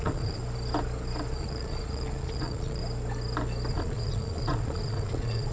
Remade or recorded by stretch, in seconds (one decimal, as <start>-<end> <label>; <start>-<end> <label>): 0.0-0.4 remade; 0.4-1.3 recorded; 1.3-2.8 remade; 2.8-3.7 recorded; 3.7-5.5 remade